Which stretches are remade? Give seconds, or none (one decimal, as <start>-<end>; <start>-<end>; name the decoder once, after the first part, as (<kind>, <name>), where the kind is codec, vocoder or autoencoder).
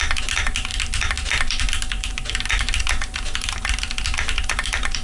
none